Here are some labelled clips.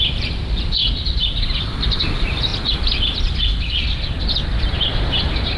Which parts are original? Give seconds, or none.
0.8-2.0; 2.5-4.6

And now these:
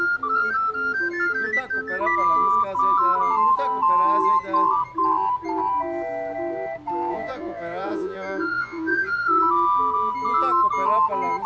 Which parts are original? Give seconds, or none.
0.0-7.1; 9.4-11.5